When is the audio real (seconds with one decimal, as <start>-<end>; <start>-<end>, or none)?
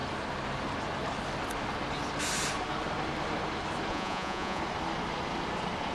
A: 0.0-3.9; 4.6-5.9